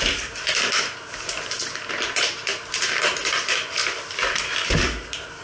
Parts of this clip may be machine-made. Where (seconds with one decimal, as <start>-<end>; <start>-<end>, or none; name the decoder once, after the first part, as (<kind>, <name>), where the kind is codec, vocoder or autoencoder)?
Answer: 0.0-5.4 (vocoder, BigVGAN v2)